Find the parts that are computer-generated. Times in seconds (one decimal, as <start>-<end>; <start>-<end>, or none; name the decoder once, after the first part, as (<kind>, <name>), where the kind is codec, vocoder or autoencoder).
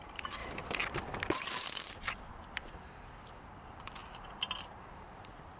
0.0-0.4 (vocoder, BigVGAN v2); 1.3-5.6